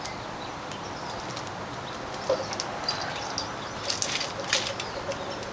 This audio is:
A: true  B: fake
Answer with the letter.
A